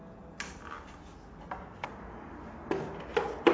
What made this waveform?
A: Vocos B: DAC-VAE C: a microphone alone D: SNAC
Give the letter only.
C